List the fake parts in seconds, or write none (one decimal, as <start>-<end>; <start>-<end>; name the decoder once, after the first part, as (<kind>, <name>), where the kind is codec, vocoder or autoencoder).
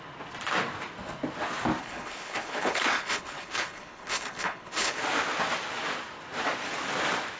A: 1.8-5.0 (codec, HILCodec)